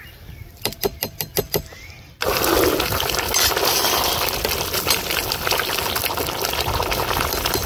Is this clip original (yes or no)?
yes